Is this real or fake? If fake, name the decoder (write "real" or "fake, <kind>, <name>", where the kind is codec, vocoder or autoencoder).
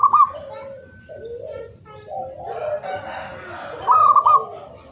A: real